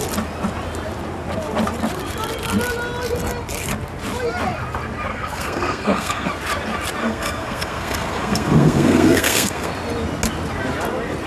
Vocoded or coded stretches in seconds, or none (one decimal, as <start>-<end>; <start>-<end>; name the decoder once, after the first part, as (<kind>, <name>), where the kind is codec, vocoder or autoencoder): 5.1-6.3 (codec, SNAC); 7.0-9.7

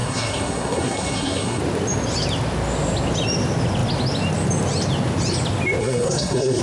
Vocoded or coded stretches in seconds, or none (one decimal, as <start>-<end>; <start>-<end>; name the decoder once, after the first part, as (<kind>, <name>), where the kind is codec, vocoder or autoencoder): 0.0-1.6 (codec, SNAC); 5.8-6.6

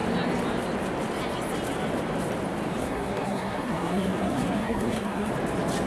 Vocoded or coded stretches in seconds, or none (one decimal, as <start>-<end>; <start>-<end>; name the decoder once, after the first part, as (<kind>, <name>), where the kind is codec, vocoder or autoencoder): 2.8-5.3 (codec, SNAC)